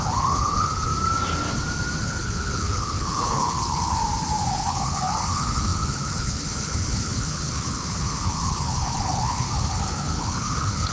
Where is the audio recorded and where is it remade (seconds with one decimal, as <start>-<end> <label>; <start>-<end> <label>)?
0.0-0.9 remade; 0.9-2.0 recorded; 2.0-4.0 remade; 4.0-4.5 recorded; 4.5-10.9 remade